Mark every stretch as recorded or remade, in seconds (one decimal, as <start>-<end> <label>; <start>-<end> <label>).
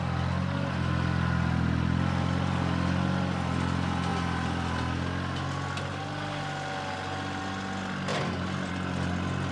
0.0-9.5 recorded